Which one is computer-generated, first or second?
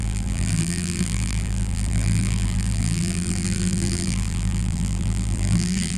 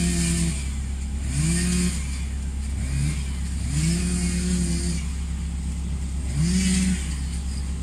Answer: first